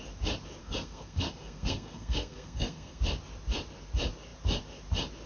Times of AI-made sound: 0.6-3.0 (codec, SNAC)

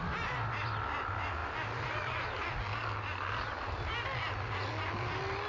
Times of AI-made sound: none

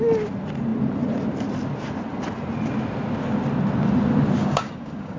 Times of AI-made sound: 4.4-5.2 (codec, DAC)

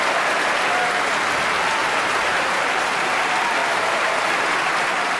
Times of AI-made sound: 1.8-3.0 (vocoder, BigVGAN v2); 3.6-4.4

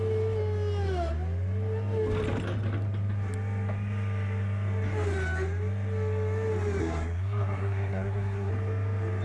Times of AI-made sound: 6.8-8.5 (codec, SNAC)

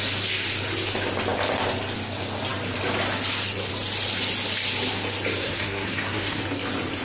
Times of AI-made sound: 5.4-6.4 (codec, SNAC)